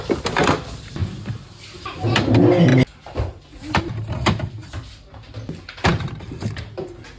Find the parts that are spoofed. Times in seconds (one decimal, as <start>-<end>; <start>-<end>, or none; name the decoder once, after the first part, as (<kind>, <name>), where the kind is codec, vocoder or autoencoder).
none